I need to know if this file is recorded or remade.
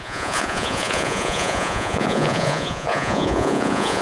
remade